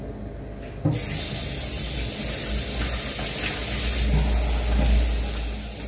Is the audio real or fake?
real